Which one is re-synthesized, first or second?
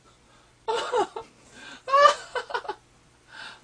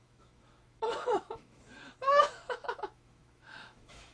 second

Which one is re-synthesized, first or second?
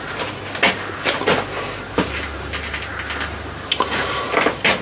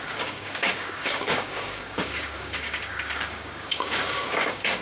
second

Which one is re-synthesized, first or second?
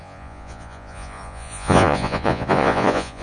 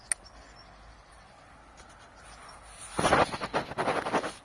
first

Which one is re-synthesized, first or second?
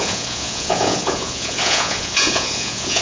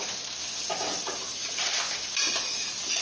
first